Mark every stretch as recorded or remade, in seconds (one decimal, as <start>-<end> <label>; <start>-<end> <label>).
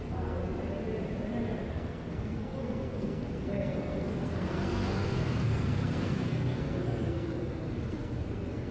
0.0-0.4 remade; 0.4-1.7 recorded; 1.7-8.7 remade